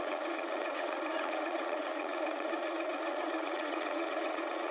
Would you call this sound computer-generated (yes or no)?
yes